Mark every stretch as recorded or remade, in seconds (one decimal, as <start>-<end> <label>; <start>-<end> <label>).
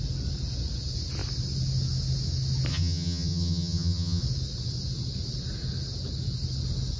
0.0-2.7 recorded; 2.7-4.2 remade; 4.2-7.0 recorded